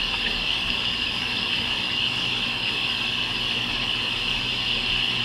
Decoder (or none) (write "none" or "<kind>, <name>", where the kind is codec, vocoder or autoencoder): codec, DAC